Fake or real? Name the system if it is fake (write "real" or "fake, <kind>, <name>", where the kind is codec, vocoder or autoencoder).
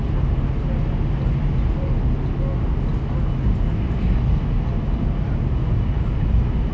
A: real